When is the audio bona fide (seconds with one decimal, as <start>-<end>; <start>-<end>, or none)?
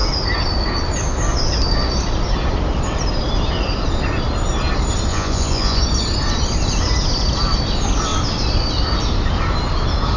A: 0.0-5.1; 5.8-10.2